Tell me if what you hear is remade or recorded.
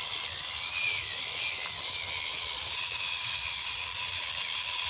recorded